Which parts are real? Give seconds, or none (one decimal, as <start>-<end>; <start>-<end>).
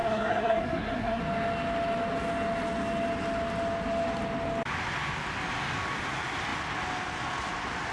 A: 1.2-7.9